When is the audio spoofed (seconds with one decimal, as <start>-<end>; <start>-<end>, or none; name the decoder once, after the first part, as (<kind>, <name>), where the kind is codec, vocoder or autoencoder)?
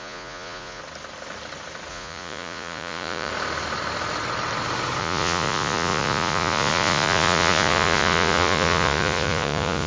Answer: 0.0-0.8 (vocoder, Vocos); 1.9-3.3; 5.0-9.9